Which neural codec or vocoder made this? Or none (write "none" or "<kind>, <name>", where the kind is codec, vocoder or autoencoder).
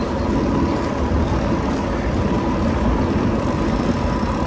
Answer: none